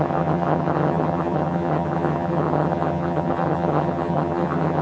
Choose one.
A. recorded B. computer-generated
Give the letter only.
B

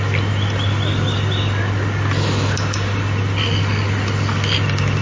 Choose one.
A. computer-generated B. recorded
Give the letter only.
B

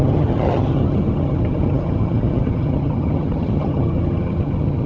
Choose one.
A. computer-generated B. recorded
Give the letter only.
A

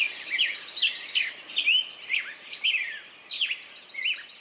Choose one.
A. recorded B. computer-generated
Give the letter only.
A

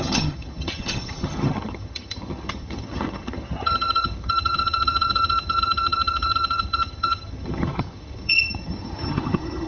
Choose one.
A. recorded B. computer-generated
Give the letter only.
B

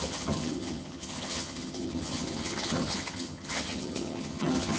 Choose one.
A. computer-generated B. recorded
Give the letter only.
A